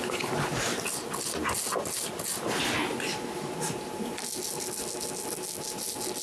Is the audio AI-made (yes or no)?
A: no